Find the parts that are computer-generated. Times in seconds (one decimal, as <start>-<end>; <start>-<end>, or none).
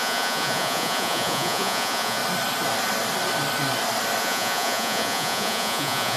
0.0-2.2; 4.2-6.2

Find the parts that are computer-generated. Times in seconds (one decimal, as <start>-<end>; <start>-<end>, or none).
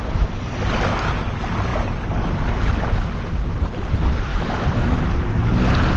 4.3-5.0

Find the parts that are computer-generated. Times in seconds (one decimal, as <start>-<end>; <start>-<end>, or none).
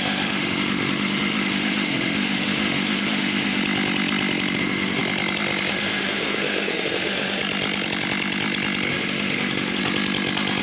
0.0-3.6; 4.6-5.0; 5.7-7.4; 8.9-9.8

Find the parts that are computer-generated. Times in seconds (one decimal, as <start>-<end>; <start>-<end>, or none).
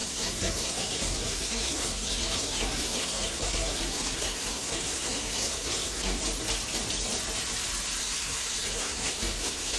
0.0-6.2; 8.0-9.8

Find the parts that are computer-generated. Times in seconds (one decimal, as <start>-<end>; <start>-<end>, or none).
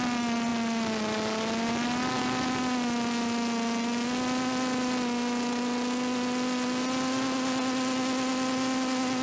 none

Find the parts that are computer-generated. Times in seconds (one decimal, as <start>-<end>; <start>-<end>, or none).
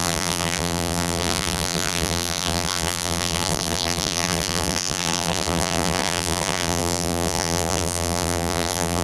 0.0-9.0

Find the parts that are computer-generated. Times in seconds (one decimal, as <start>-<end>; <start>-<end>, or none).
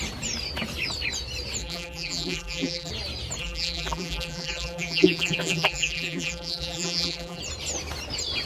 1.6-2.9; 3.4-7.4